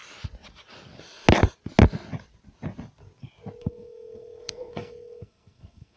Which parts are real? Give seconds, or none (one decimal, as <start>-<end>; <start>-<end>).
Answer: 0.0-3.6